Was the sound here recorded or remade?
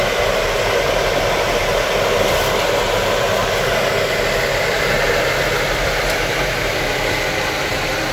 recorded